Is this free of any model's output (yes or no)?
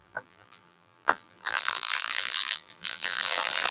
no